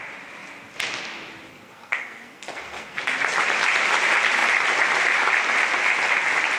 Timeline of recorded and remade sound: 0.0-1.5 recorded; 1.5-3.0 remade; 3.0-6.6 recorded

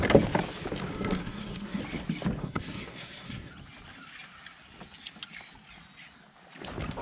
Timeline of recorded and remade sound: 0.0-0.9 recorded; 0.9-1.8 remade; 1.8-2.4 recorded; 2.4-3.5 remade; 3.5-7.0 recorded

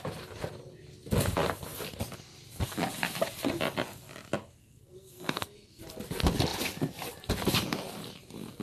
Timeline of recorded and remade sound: 0.0-4.6 recorded; 4.6-5.8 remade; 5.8-8.6 recorded

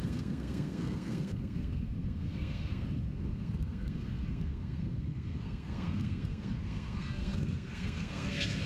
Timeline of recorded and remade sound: 0.0-8.7 remade